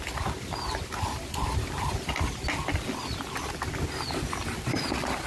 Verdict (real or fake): real